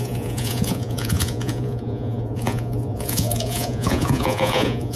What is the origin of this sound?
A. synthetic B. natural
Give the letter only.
A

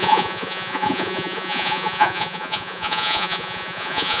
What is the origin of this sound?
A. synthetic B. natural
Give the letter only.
A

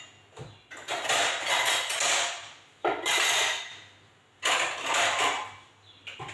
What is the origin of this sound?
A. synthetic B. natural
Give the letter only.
B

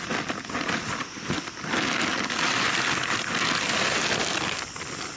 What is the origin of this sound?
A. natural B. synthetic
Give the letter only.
A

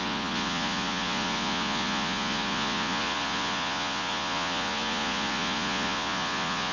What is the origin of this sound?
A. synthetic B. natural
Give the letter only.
A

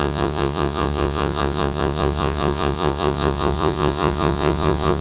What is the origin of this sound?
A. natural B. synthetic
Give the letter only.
B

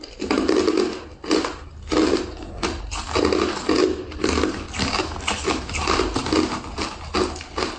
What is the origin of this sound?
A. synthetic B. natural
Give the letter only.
B